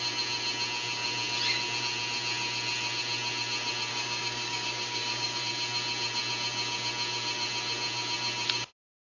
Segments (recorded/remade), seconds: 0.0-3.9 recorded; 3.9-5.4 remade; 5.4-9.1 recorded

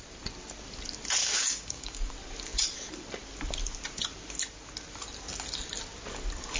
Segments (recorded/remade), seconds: 0.0-1.2 recorded; 1.2-2.1 remade; 2.1-6.6 recorded

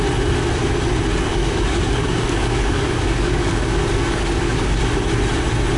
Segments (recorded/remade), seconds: 0.0-1.3 recorded; 1.3-4.8 remade; 4.8-5.8 recorded

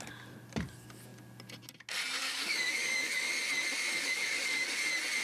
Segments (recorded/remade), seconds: 0.0-2.2 recorded; 2.2-3.3 remade; 3.3-3.9 recorded; 3.9-4.8 remade; 4.8-5.2 recorded

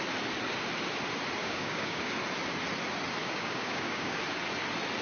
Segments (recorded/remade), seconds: 0.0-1.4 recorded; 1.4-2.1 remade; 2.1-3.2 recorded; 3.2-4.2 remade; 4.2-5.0 recorded